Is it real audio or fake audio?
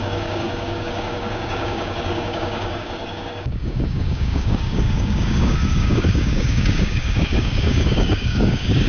fake